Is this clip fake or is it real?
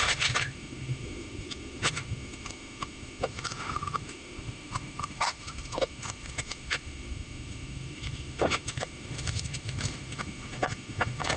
fake